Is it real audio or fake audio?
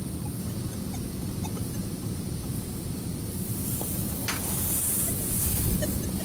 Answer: fake